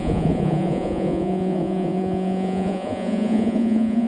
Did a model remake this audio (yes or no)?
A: yes